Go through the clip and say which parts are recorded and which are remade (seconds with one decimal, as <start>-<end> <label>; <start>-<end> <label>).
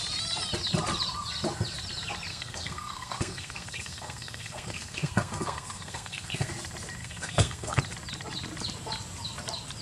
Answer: 0.0-2.3 recorded; 2.3-6.5 remade; 6.5-7.0 recorded; 7.0-7.8 remade; 7.8-9.8 recorded